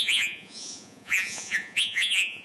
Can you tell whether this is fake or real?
fake